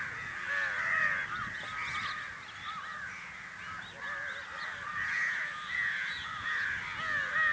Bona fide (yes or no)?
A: yes